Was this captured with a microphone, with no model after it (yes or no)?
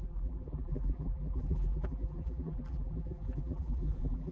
no